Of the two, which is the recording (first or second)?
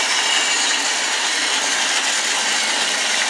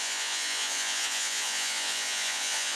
first